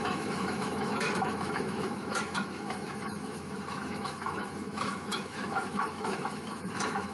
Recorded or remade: remade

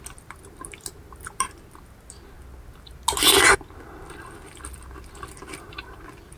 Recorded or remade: recorded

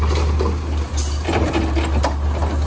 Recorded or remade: recorded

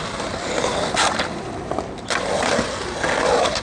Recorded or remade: recorded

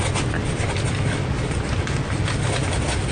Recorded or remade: recorded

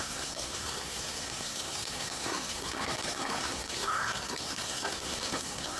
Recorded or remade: remade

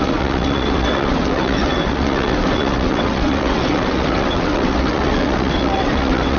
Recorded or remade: remade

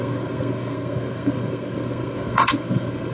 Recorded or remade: remade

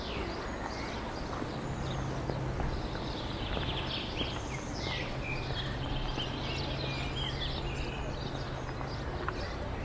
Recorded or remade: recorded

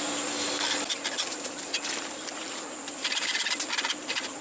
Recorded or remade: recorded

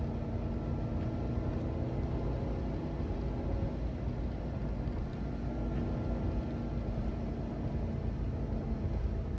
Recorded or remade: recorded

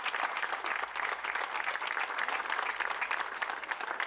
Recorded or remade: recorded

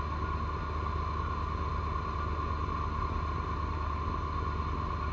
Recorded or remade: recorded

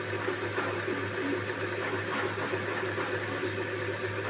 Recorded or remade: recorded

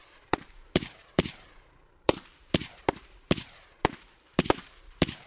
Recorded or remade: remade